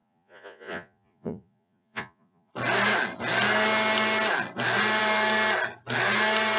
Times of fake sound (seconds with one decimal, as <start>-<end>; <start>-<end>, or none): 0.0-2.5